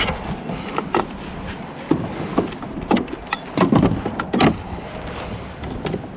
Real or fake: real